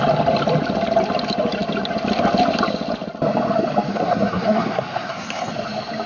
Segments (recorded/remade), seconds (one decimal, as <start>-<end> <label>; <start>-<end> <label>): 0.0-3.9 recorded; 3.9-5.5 remade; 5.5-6.1 recorded